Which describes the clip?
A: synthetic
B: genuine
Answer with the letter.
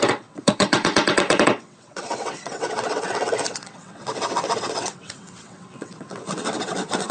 A